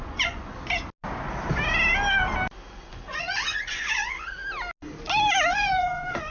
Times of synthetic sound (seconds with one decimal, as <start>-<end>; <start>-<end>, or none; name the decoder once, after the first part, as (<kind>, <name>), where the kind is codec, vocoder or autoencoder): 0.0-0.5 (vocoder, Vocos); 2.7-4.4; 5.5-6.3